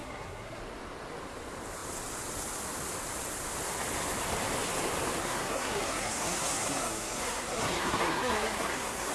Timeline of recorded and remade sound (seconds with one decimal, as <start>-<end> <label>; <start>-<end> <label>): 0.0-0.6 remade; 0.6-5.2 recorded; 5.2-9.1 remade